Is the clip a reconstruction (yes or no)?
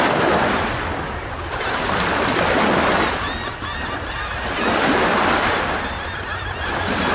no